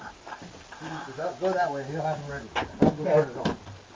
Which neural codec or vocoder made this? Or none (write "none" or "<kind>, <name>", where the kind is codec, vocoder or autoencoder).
none